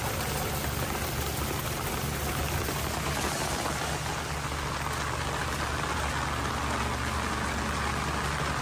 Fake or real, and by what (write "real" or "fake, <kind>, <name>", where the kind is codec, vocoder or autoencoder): real